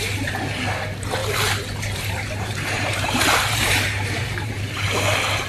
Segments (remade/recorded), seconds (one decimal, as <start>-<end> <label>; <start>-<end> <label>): 0.0-1.2 recorded; 1.2-4.5 remade; 4.5-5.5 recorded